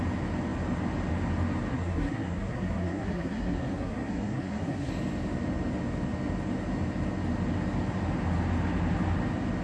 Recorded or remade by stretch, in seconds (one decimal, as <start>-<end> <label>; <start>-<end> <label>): 0.0-1.7 recorded; 1.7-4.9 remade; 4.9-9.6 recorded